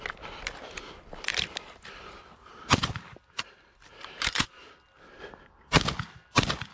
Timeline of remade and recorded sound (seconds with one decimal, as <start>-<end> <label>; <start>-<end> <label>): 0.0-1.3 recorded; 1.3-4.7 remade; 4.7-6.7 recorded